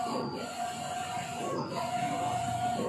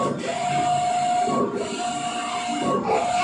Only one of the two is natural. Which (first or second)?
second